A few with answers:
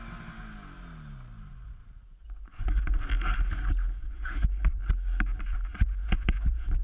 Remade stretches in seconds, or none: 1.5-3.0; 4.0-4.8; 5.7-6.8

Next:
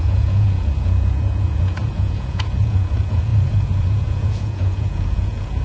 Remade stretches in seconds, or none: 0.0-5.6

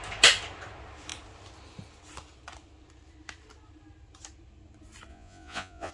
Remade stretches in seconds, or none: 5.1-5.9

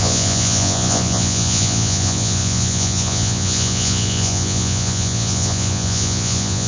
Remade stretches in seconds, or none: 0.0-6.7

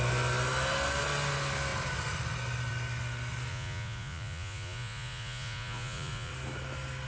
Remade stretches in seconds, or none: 3.5-6.3

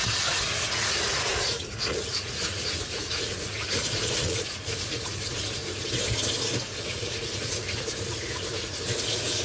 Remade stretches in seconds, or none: 0.0-5.6; 6.8-9.4

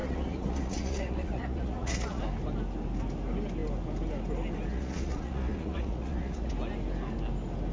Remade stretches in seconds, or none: 0.0-2.2; 4.7-6.5